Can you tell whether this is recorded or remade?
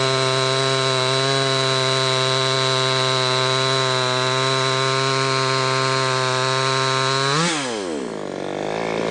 recorded